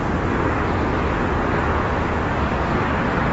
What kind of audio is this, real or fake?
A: real